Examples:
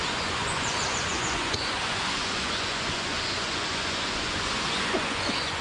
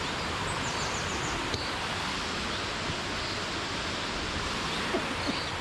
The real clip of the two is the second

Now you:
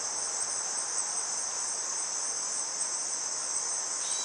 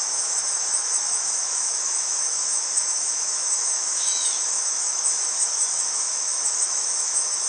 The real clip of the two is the first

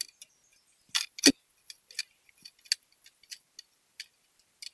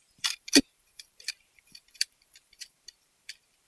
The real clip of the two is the first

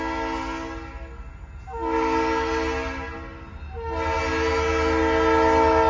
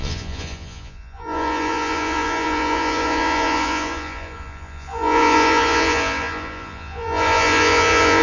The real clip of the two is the first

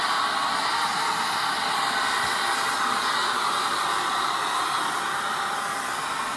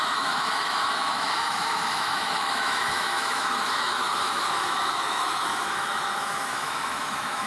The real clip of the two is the first